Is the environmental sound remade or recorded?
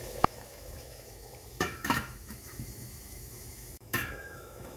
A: remade